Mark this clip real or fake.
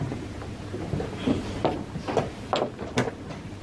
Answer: real